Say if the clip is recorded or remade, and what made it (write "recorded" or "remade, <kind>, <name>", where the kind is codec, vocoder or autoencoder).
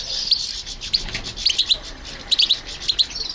remade, vocoder, BigVGAN v2